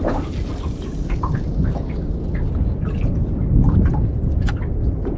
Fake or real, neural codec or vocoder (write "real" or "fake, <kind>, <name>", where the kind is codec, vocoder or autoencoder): real